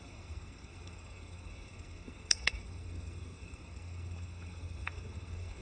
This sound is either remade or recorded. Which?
remade